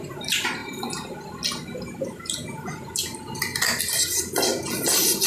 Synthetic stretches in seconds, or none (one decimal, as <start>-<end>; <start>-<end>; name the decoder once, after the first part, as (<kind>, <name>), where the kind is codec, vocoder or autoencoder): 0.0-0.6 (vocoder, BigVGAN v2); 3.8-4.5